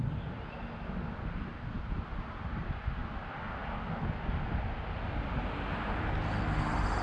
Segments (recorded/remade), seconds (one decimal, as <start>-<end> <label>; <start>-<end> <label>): 0.0-7.0 recorded